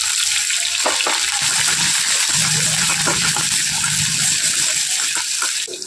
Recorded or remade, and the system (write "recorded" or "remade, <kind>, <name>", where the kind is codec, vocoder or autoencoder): recorded